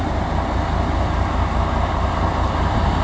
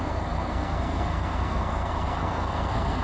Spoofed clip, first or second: second